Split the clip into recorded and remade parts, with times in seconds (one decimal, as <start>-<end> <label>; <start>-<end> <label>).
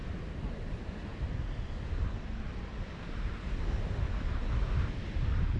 0.0-5.6 recorded